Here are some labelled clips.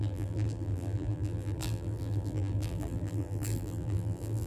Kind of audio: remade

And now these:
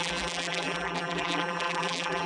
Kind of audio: remade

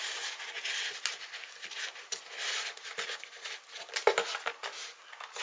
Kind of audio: recorded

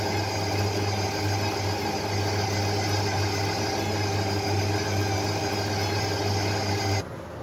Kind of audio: recorded